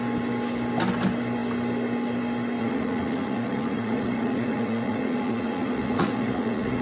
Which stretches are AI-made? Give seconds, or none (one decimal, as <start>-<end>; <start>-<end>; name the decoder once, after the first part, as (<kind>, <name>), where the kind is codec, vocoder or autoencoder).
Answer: 2.6-6.8 (vocoder, Vocos)

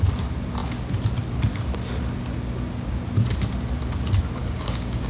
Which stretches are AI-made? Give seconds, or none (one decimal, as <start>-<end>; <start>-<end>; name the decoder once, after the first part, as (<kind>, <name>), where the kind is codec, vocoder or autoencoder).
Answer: 4.4-5.1 (codec, DAC)

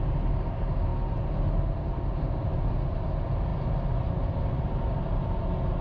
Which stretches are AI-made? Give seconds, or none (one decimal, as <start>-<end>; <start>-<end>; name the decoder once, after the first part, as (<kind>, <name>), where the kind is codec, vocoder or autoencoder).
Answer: none

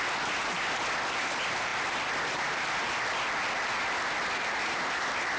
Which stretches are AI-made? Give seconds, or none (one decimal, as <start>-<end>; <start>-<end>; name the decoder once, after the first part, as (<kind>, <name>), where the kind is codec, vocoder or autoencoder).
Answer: none